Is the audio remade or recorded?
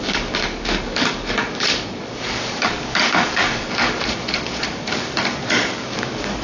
remade